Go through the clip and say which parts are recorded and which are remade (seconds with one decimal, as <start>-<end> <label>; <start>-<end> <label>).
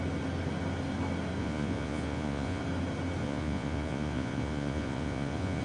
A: 0.0-1.4 recorded; 1.4-2.6 remade; 2.6-3.2 recorded; 3.2-5.6 remade